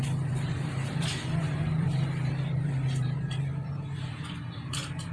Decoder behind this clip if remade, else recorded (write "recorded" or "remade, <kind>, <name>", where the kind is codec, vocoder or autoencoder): remade, vocoder, BigVGAN v2